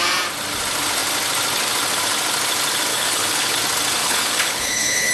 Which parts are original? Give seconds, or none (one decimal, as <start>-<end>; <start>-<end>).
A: 0.0-2.9; 3.6-4.0